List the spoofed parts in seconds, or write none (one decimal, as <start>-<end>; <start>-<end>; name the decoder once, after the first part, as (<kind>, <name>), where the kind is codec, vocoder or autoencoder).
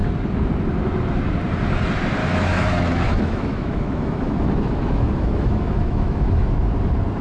2.2-6.5 (autoencoder, DAC-VAE)